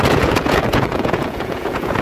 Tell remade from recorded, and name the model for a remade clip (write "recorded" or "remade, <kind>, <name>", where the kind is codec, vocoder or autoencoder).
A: remade, vocoder, Vocos